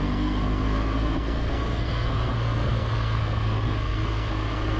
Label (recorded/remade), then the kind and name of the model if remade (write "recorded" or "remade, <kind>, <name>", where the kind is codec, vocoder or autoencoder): remade, codec, SNAC